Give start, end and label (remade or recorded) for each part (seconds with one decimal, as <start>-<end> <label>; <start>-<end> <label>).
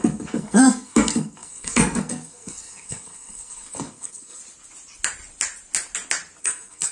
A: 0.0-4.4 remade; 4.4-6.4 recorded; 6.4-6.9 remade